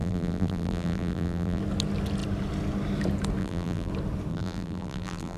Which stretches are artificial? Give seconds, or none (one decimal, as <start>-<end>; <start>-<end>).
0.0-1.6; 3.4-3.9; 4.3-5.4